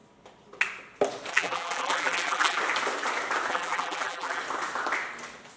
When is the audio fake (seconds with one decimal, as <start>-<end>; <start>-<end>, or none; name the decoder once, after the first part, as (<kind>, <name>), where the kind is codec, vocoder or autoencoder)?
1.3-2.6 (vocoder, BigVGAN v2); 3.5-4.4